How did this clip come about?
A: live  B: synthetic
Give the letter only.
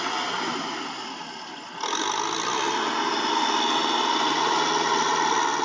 A